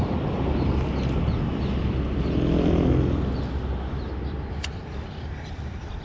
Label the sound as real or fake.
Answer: real